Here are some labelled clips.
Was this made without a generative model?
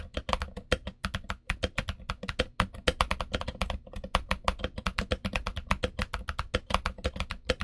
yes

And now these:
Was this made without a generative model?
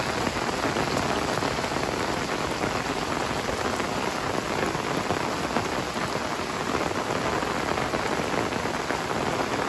yes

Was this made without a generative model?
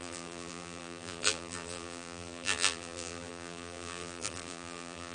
no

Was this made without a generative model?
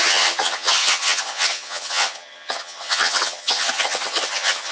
no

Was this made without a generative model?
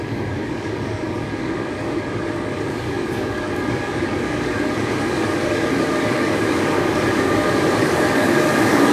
no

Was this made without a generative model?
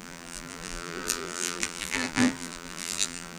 no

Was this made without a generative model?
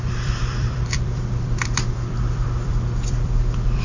no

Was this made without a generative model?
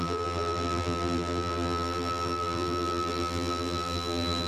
no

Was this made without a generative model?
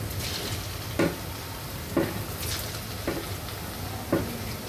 yes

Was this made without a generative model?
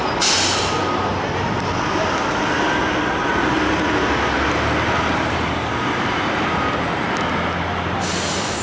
yes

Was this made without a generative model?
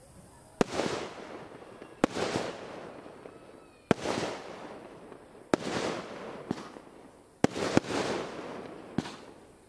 yes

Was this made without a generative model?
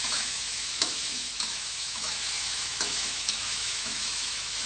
no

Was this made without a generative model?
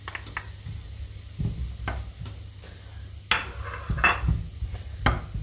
yes